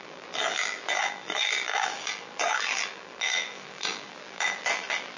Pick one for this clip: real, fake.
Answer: fake